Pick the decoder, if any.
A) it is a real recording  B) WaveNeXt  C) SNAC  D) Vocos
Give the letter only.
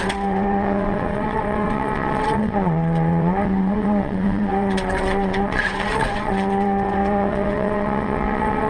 B